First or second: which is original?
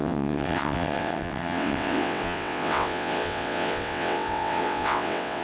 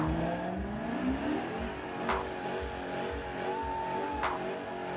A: second